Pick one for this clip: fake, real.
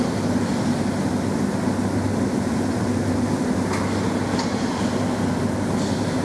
real